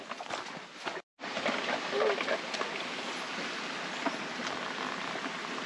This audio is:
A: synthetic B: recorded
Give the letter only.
B